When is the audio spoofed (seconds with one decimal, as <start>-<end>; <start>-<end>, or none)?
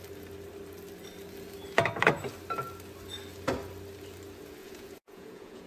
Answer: 4.6-5.7